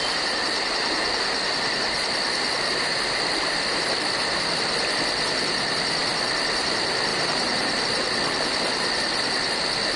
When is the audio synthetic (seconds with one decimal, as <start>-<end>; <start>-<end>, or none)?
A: 7.1-7.8